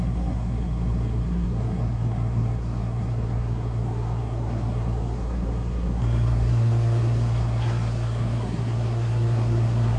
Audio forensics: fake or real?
fake